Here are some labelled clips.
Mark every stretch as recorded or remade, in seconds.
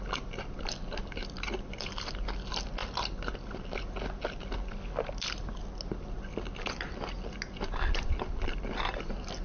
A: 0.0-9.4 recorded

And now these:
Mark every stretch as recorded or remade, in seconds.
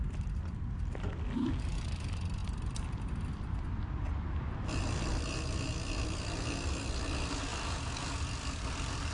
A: 0.0-9.1 recorded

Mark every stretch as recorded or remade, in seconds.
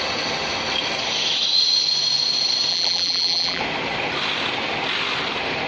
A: 0.0-2.7 recorded; 2.7-3.6 remade; 3.6-5.7 recorded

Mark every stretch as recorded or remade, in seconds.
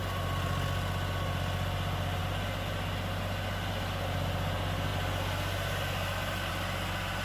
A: 0.0-7.2 recorded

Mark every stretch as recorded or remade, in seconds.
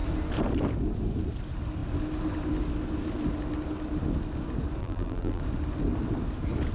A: 0.0-4.8 recorded; 4.8-5.4 remade; 5.4-6.7 recorded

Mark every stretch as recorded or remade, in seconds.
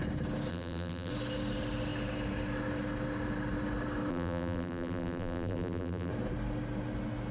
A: 0.0-0.5 recorded; 0.5-1.1 remade; 1.1-4.1 recorded; 4.1-6.1 remade; 6.1-7.3 recorded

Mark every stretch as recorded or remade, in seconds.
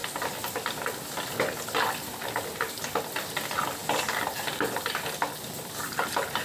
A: 0.0-6.4 recorded